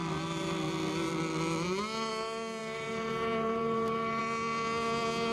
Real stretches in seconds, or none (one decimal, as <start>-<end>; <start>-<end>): 0.0-2.6; 4.2-5.3